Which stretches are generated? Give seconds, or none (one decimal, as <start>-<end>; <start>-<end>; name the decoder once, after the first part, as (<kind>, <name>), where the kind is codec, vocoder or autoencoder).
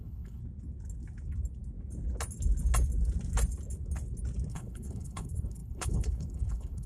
0.0-0.4 (codec, HILCodec); 4.5-6.9